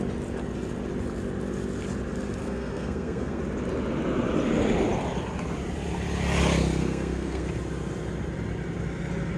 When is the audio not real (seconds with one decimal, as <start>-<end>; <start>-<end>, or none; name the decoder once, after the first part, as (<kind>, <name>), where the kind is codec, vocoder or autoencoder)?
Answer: 2.4-3.4 (codec, SNAC); 6.8-7.5